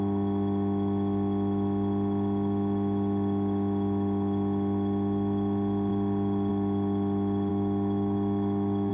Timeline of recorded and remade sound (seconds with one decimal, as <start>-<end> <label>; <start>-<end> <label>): 0.0-7.5 recorded; 7.5-8.9 remade